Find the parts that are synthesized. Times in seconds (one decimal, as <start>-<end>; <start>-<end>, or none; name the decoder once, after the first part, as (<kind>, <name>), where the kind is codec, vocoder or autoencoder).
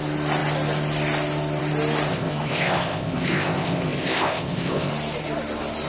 2.1-4.9 (codec, ZipCodec)